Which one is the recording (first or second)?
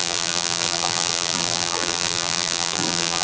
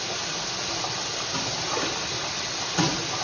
second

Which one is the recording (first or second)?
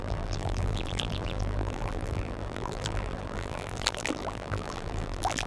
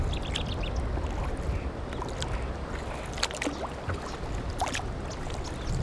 second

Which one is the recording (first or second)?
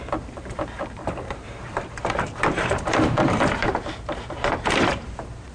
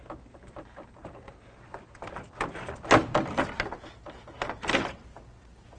second